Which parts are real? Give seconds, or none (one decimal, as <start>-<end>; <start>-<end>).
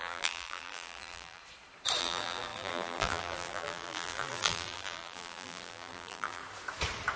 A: 1.4-2.0; 6.4-7.2